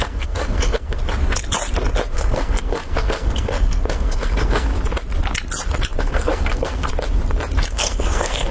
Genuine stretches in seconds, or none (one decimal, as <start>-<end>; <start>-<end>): 1.0-2.1; 4.7-6.0; 6.9-7.7

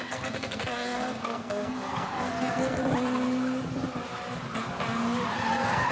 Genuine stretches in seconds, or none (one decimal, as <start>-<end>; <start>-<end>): 2.8-5.5

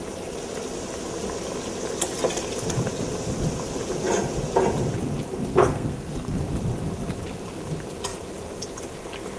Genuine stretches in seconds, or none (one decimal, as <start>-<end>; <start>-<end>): 0.0-5.5; 6.4-9.4

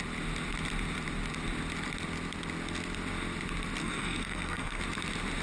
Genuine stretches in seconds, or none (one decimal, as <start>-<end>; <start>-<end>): 0.0-3.8; 4.8-5.4

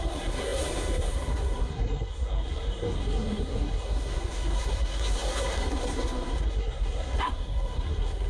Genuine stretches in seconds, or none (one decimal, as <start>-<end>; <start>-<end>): none

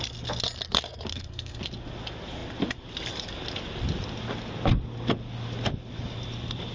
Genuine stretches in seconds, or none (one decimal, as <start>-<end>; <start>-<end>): 0.0-1.1; 1.6-6.7

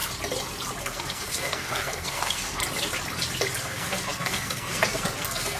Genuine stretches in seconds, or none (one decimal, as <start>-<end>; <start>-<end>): 0.0-0.8; 2.6-3.6